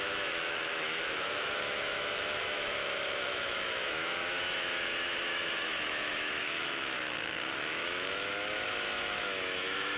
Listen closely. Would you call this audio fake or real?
fake